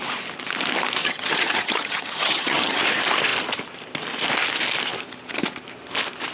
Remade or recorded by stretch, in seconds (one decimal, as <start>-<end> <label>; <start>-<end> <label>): 0.0-1.0 recorded; 1.0-2.8 remade; 2.8-6.3 recorded

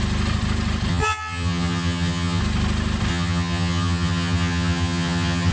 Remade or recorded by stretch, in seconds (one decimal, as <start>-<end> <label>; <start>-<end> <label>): 0.0-0.9 recorded; 0.9-2.4 remade; 2.4-3.1 recorded; 3.1-5.5 remade

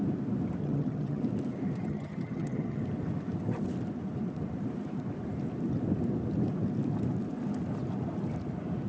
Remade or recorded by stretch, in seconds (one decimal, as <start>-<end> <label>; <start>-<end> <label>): 0.0-0.6 recorded; 0.6-1.2 remade; 1.2-1.8 recorded; 1.8-2.8 remade; 2.8-8.9 recorded

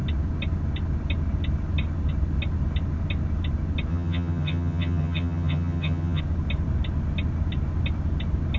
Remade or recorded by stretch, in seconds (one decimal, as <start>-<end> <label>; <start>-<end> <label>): 0.0-3.9 recorded; 3.9-6.2 remade; 6.2-8.6 recorded